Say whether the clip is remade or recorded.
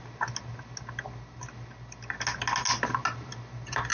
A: recorded